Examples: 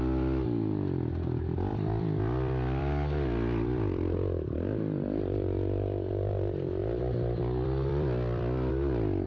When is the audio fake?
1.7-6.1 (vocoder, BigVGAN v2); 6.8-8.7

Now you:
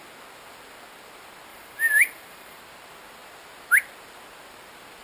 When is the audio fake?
1.5-2.6 (vocoder, BigVGAN v2)

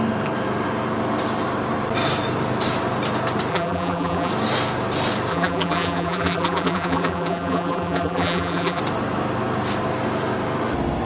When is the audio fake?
3.5-4.3 (vocoder, BigVGAN v2); 5.3-8.8